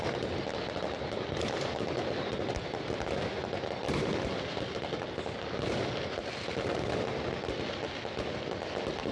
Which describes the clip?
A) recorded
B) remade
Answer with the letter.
A